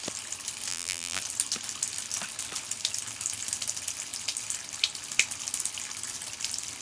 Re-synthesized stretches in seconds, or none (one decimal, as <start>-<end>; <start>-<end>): 0.7-1.2